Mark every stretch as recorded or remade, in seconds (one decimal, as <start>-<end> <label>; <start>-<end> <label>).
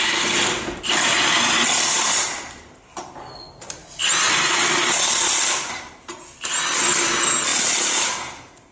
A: 0.0-7.5 recorded; 7.5-8.7 remade